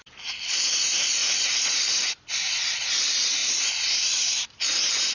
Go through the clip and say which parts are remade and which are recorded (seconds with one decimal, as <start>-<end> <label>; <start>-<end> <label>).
0.0-5.1 recorded